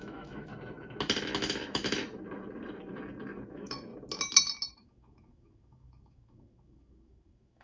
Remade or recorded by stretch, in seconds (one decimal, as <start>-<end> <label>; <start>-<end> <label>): 0.0-0.5 remade; 0.5-1.4 recorded; 1.4-2.0 remade; 2.0-3.5 recorded; 3.5-3.9 remade; 3.9-4.7 recorded; 4.7-7.6 remade